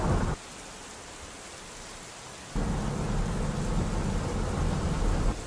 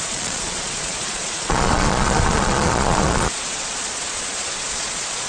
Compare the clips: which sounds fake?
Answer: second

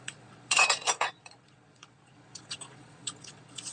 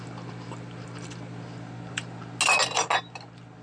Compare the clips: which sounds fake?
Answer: first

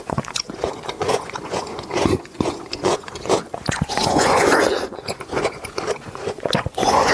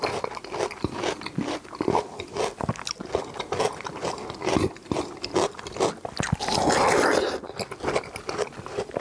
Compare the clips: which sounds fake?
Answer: first